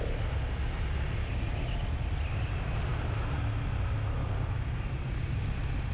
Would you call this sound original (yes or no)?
yes